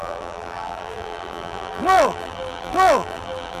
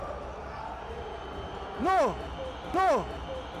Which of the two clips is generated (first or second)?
first